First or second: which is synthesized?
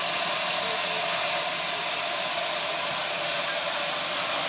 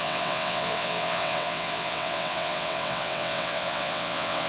second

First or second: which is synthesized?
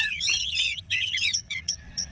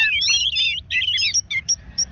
first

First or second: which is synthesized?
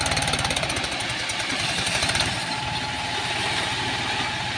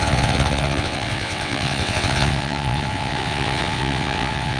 second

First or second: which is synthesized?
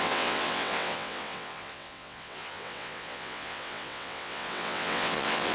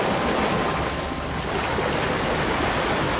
first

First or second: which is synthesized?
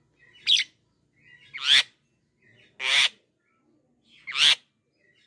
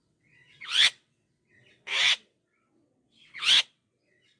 second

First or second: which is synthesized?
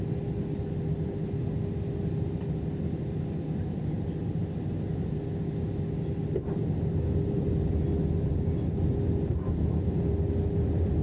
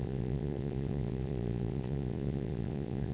second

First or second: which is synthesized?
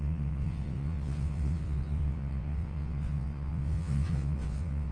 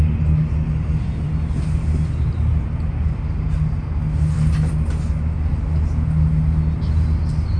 first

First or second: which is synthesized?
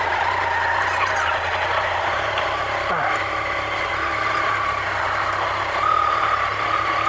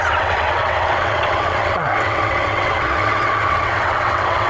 second